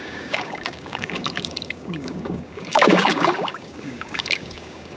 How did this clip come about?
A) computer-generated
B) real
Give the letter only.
A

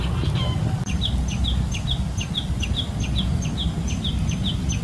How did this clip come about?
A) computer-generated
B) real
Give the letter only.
B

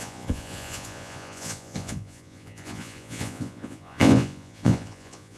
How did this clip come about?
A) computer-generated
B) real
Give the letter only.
A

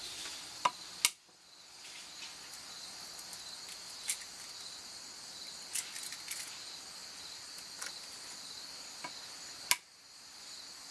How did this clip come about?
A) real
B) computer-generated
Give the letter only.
A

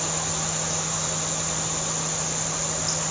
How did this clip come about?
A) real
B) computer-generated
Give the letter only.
A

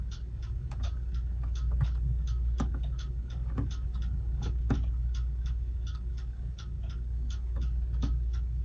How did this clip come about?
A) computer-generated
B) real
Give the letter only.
A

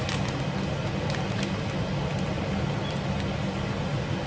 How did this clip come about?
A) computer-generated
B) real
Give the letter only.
B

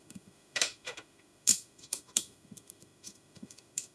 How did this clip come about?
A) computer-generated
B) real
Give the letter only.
A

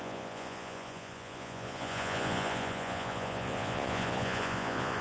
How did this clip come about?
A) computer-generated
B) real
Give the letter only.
A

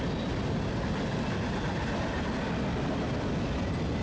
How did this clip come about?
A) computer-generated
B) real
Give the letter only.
B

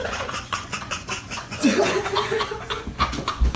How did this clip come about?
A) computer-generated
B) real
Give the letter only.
A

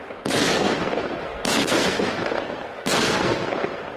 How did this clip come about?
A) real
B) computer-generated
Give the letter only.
B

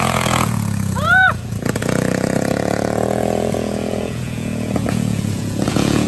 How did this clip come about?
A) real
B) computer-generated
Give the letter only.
B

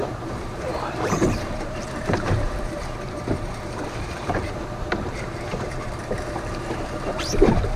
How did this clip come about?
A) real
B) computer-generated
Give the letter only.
B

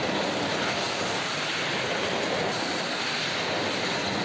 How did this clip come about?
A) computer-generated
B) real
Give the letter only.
B